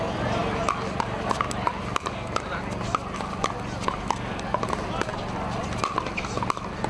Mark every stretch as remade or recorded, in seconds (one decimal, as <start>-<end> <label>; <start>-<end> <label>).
0.0-6.9 recorded